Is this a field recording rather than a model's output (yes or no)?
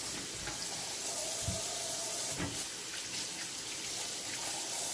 yes